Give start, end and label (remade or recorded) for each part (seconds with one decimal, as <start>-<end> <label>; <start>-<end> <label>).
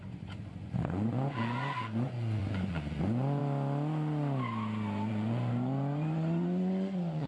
0.0-3.4 remade; 3.4-5.1 recorded; 5.1-7.3 remade